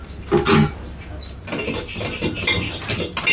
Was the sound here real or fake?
real